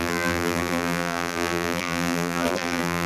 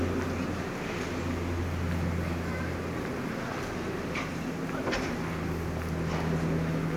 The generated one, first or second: first